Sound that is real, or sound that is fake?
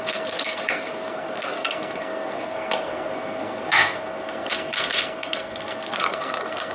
fake